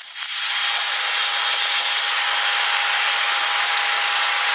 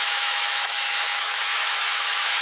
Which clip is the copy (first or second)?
second